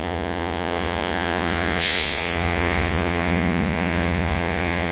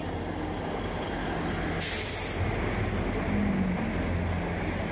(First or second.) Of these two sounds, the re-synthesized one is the first